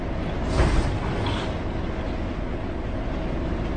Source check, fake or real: real